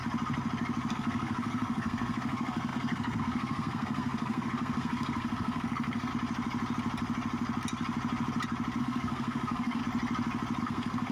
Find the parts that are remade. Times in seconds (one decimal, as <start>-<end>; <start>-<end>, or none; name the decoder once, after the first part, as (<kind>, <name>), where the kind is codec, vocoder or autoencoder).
0.9-6.1 (codec, SNAC); 8.8-9.8; 10.6-11.1